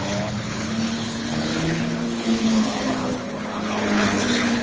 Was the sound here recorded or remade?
remade